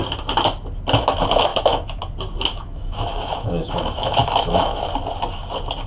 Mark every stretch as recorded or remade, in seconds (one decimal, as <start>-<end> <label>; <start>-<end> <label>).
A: 0.0-1.5 recorded; 1.5-2.0 remade; 2.0-2.5 recorded; 2.5-4.8 remade; 4.8-5.9 recorded